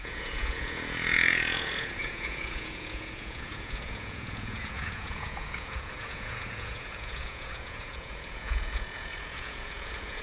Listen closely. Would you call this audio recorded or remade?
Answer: remade